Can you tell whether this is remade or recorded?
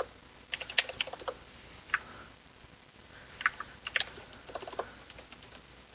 recorded